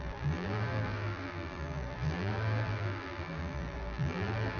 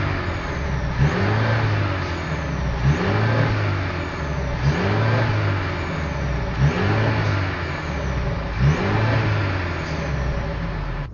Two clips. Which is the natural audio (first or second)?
second